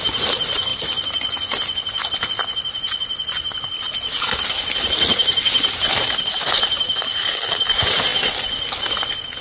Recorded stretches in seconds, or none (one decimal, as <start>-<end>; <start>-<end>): 0.0-9.4